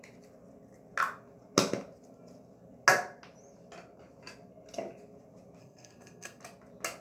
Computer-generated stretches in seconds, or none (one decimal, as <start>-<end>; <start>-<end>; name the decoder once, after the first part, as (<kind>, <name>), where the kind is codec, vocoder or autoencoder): 5.6-6.4 (codec, SNAC)